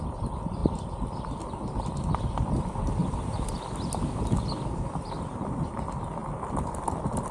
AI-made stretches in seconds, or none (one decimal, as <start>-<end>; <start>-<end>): 0.0-6.2